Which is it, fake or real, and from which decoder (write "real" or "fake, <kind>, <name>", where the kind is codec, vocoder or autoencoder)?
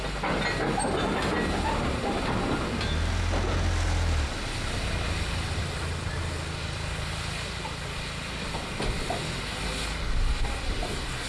real